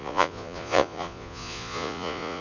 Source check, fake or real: fake